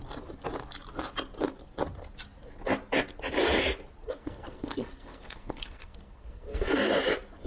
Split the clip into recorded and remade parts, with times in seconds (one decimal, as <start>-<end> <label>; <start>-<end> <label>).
0.0-4.0 recorded; 4.0-6.9 remade; 6.9-7.5 recorded